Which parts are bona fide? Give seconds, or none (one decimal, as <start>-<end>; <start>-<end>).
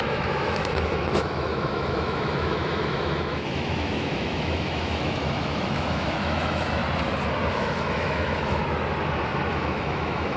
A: 6.8-7.5; 8.6-9.5